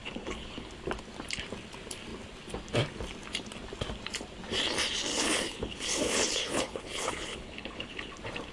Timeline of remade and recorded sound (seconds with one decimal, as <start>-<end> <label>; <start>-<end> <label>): 0.0-0.7 remade; 0.7-5.1 recorded; 5.1-8.1 remade; 8.1-8.5 recorded